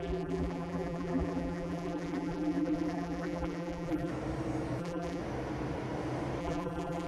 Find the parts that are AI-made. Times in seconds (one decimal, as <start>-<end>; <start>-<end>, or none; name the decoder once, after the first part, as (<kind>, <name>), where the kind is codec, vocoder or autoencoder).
0.0-4.1 (vocoder, BigVGAN v2); 4.8-5.2; 6.4-7.1